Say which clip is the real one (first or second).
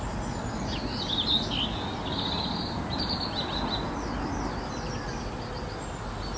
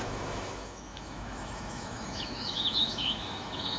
first